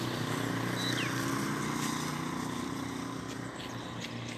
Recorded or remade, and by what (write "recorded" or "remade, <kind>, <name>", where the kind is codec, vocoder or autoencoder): recorded